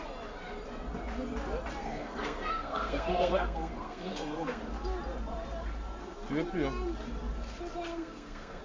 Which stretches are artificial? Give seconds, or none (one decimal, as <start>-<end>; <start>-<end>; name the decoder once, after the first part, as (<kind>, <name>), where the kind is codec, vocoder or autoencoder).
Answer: 1.8-4.6 (codec, SNAC); 7.9-8.6